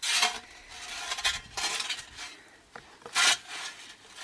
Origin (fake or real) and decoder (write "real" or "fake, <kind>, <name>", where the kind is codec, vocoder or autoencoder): real